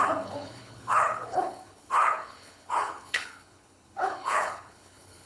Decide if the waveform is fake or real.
fake